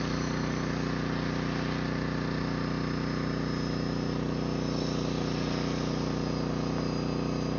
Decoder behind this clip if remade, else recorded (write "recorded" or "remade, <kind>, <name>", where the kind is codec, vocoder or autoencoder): recorded